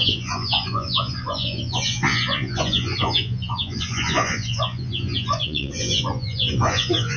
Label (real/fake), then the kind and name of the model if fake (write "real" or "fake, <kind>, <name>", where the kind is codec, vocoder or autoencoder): fake, vocoder, Vocos